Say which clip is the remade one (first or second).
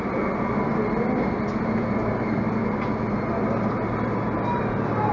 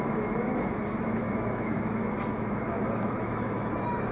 second